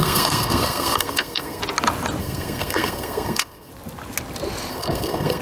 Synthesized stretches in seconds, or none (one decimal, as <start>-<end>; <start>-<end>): 0.0-1.6; 2.2-3.7; 4.7-5.4